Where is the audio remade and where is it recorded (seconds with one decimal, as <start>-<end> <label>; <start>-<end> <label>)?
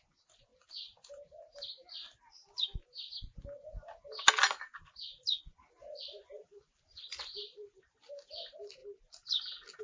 0.0-0.5 remade; 0.5-5.4 recorded; 5.4-8.8 remade; 8.8-9.8 recorded